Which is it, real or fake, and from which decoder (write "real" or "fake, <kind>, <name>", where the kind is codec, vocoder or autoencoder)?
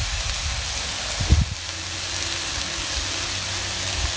real